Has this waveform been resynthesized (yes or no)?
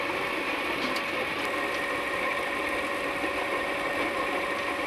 no